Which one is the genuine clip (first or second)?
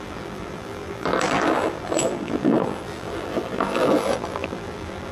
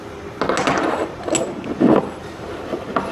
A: second